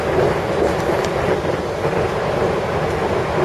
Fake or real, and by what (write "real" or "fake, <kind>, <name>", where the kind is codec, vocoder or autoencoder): real